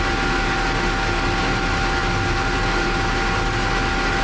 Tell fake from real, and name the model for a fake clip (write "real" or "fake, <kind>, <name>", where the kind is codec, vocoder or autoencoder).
real